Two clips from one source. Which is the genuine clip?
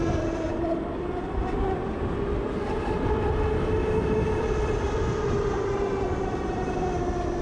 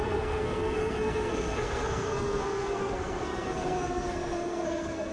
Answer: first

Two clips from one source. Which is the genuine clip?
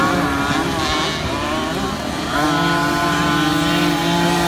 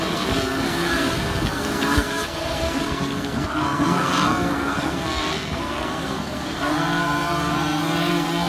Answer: first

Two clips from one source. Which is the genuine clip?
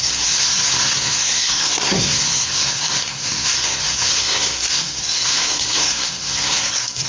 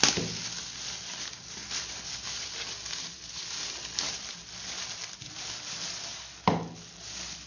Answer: second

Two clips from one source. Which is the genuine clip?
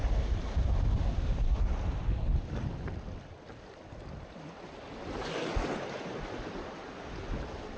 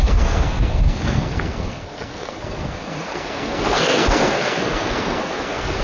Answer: first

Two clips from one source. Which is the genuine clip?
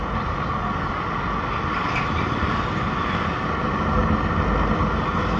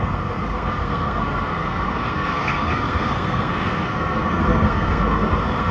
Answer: first